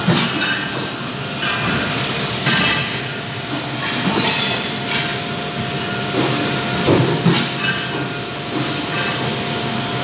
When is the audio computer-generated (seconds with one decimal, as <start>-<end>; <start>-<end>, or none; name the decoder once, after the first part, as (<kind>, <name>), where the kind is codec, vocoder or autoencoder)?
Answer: 2.8-3.5 (codec, DAC)